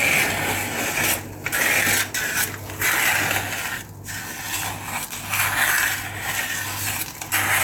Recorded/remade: recorded